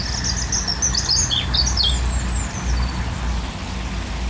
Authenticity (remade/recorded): recorded